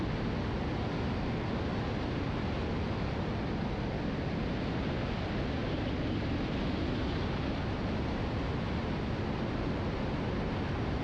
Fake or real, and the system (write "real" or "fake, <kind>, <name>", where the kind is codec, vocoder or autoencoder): real